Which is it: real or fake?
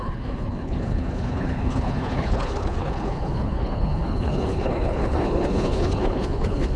fake